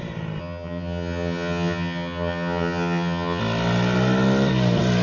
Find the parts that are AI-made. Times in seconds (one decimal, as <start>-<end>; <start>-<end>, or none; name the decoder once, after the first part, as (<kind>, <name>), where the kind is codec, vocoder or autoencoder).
0.4-3.4 (vocoder, HiFi-GAN)